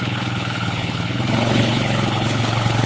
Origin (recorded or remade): remade